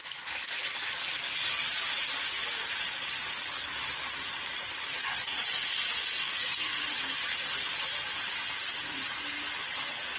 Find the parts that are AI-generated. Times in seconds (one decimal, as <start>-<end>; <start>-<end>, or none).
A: 6.2-6.8